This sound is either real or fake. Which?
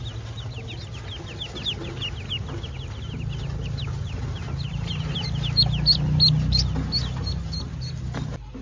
real